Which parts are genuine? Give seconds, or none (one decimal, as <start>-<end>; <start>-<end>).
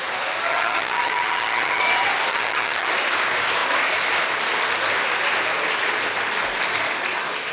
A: 0.0-0.5; 1.8-2.3; 2.9-7.5